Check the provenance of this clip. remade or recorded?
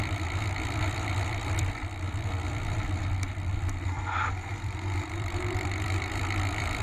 remade